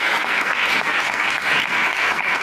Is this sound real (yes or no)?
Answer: no